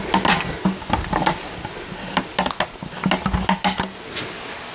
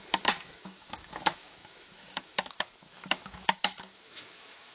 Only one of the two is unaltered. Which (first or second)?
first